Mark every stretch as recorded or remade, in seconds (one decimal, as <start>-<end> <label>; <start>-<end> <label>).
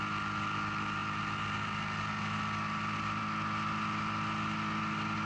0.0-5.3 recorded